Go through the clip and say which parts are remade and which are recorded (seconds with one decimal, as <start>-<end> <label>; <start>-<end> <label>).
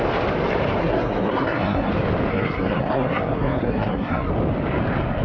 0.0-0.8 recorded; 0.8-1.9 remade; 1.9-2.3 recorded; 2.3-4.3 remade; 4.3-5.2 recorded